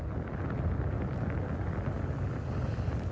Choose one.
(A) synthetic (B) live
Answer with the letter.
B